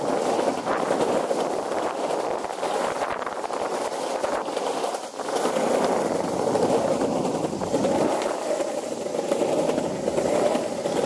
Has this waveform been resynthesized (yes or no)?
no